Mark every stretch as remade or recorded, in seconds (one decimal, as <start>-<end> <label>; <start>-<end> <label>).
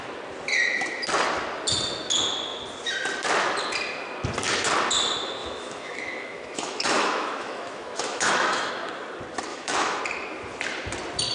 0.0-5.4 recorded; 5.4-8.7 remade; 8.7-9.5 recorded; 9.5-10.0 remade; 10.0-11.3 recorded